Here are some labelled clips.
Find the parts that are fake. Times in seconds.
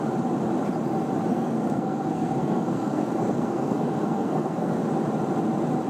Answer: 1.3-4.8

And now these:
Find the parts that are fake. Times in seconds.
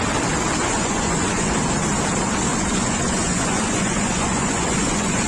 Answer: 0.6-1.5; 2.5-5.3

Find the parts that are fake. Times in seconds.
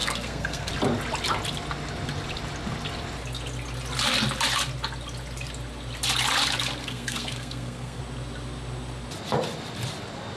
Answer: 0.0-0.7; 6.8-8.0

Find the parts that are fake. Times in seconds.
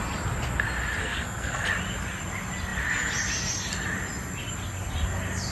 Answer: 1.0-1.7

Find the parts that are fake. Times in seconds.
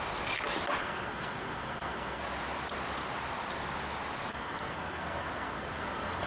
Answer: 0.8-2.2; 4.3-6.3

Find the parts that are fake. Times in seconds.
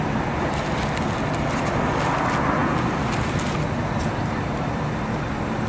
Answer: none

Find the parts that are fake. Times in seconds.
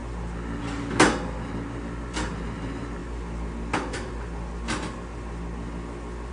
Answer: none